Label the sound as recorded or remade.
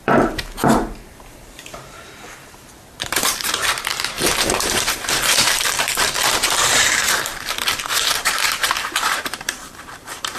remade